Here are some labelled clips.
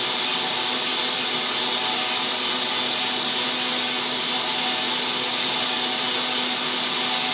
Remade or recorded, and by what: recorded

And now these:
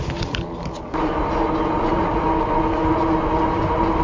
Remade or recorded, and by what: recorded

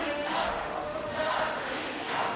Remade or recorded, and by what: remade, autoencoder, DAC-VAE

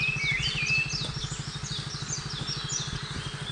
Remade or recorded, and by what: recorded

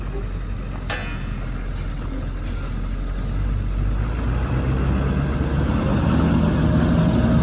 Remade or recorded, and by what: recorded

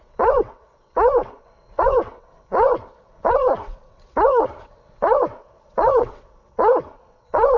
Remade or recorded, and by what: remade, vocoder, WaveNeXt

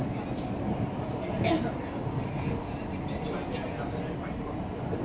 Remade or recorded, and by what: recorded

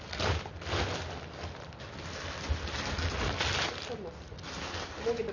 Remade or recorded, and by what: recorded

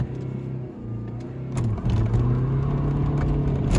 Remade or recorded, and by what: recorded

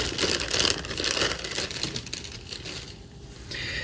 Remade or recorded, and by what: recorded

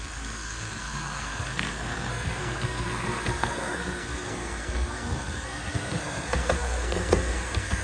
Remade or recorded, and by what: remade, codec, SNAC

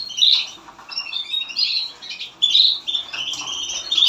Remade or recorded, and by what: recorded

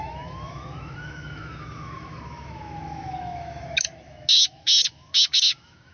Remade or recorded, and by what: remade, autoencoder, DAC-VAE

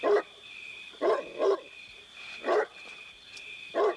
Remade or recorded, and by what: remade, vocoder, BigVGAN v2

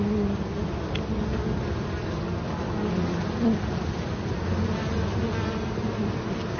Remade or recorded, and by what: recorded